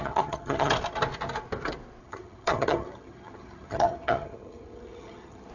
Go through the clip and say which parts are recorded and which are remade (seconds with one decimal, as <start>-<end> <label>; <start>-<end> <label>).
0.0-0.7 remade; 0.7-2.0 recorded; 2.0-5.5 remade

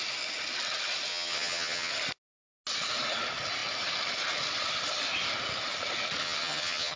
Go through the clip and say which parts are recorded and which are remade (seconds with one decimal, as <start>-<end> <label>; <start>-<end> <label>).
0.0-1.1 recorded; 1.1-1.9 remade; 1.9-6.2 recorded; 6.2-7.0 remade

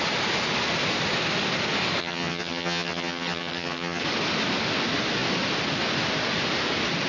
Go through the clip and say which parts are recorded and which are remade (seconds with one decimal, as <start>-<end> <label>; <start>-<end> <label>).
0.0-2.0 recorded; 2.0-4.0 remade; 4.0-7.1 recorded